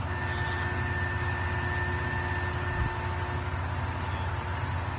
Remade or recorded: recorded